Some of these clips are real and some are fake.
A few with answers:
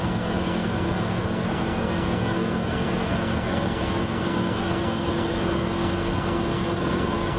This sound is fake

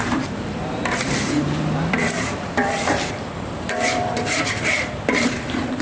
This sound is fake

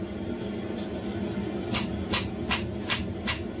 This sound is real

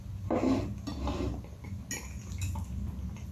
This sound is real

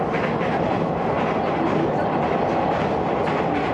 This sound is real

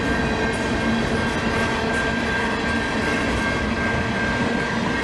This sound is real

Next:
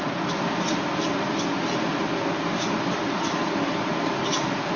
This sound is real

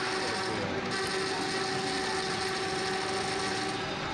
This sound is real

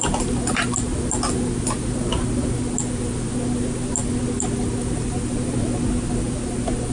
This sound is real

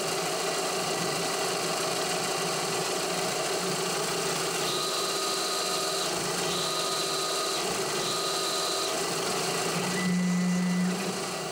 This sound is real